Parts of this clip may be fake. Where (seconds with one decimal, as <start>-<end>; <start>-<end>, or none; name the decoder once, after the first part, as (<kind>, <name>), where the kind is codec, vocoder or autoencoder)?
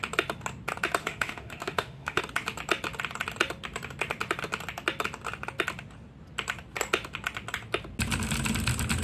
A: 1.0-2.2 (autoencoder, DAC-VAE)